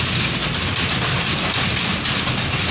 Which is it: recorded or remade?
recorded